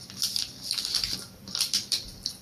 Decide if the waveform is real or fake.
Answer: fake